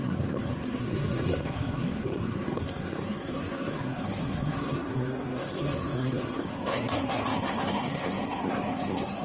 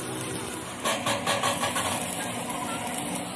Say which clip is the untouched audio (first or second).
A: second